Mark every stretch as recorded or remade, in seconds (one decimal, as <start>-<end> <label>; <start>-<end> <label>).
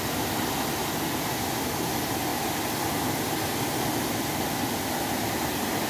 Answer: 0.0-5.9 recorded